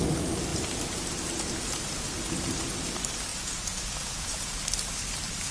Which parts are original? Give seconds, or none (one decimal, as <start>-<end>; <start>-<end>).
0.0-3.3; 4.6-5.5